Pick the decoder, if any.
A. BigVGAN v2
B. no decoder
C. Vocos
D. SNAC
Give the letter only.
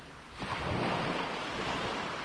B